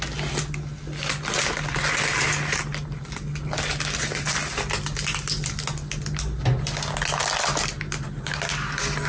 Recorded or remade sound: recorded